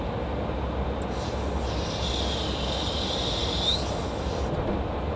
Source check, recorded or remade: recorded